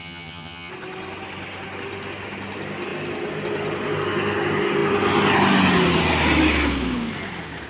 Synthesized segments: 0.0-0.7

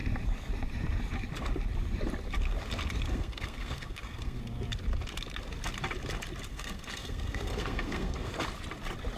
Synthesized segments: 3.1-4.4; 6.5-8.3

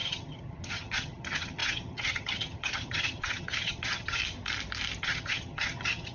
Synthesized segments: 0.0-4.2; 5.0-6.1

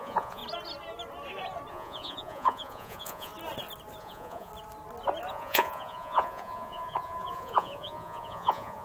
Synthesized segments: 0.0-0.4; 1.7-3.3; 4.0-4.5; 5.3-8.8

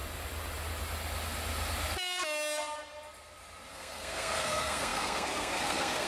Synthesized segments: 3.7-6.1

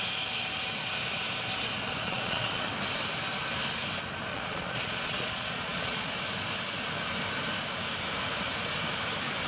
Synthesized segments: 2.0-2.7; 4.3-6.1

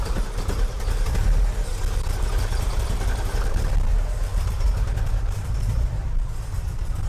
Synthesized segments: 0.0-1.7; 2.3-7.1

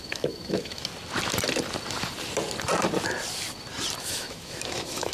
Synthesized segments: 0.0-0.9; 4.0-5.1